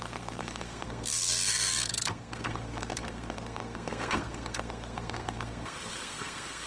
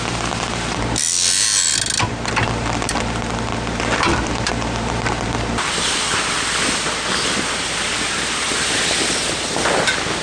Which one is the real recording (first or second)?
second